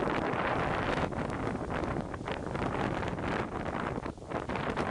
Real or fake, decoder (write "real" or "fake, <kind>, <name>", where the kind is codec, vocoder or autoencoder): real